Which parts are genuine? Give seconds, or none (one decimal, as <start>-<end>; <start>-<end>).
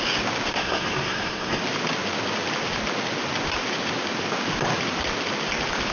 0.0-0.5; 1.6-5.9